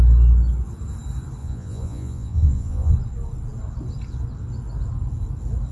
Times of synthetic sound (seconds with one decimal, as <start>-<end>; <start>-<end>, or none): 1.4-2.9